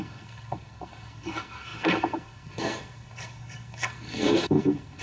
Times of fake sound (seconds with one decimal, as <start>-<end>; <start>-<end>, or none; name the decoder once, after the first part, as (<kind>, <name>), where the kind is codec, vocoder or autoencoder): 0.0-5.0 (codec, SNAC)